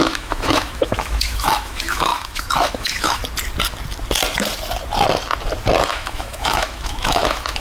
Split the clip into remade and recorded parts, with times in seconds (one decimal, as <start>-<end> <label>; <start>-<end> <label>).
0.0-3.2 remade; 3.2-5.9 recorded; 5.9-7.6 remade